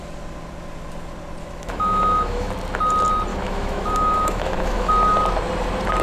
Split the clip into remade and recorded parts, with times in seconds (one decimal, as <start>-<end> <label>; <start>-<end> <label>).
0.0-1.4 recorded; 1.4-2.5 remade; 2.5-3.3 recorded; 3.3-4.9 remade; 4.9-6.0 recorded